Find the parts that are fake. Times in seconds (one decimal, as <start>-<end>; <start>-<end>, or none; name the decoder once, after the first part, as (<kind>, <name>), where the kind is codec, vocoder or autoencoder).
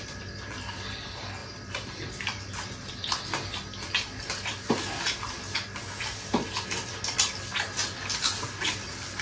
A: none